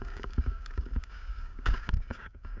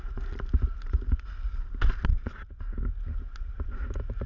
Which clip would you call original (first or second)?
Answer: second